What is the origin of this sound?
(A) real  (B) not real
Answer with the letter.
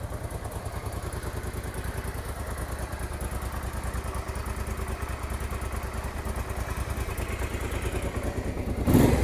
A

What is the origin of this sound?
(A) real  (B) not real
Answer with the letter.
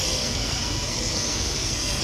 B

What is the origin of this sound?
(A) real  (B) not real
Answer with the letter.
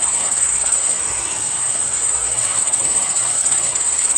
B